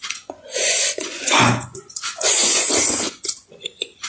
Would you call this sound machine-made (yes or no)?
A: yes